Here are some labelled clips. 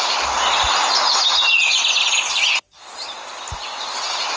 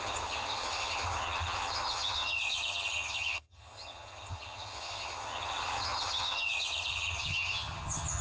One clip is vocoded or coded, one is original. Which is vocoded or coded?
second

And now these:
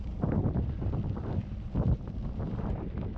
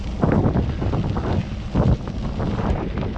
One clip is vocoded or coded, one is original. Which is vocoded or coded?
first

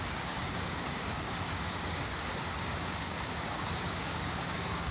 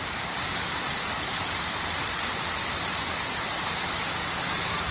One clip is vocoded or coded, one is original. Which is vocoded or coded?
first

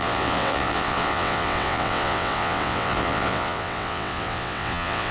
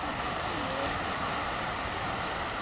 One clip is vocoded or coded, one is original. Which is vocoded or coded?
first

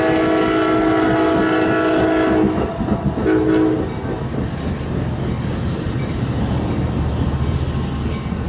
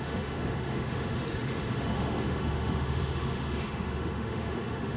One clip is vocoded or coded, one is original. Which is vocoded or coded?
second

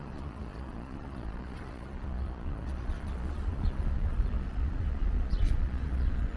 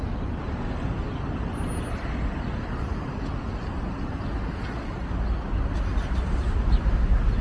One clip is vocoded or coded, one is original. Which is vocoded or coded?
first